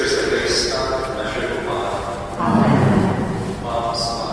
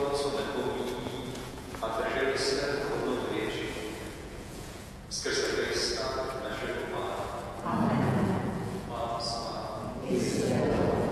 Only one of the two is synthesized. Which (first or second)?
second